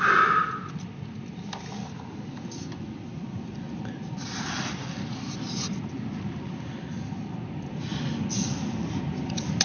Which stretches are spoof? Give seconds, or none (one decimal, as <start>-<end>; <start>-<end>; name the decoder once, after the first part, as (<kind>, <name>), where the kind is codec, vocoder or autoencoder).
none